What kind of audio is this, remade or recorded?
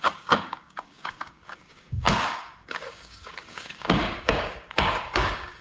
remade